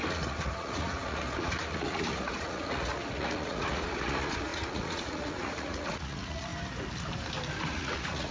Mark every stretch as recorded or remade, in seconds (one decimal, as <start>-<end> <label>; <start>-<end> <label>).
0.0-6.5 remade; 6.5-7.6 recorded; 7.6-8.3 remade